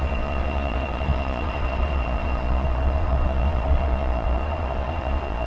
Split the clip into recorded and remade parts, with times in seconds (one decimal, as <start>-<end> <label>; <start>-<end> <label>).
0.0-5.5 remade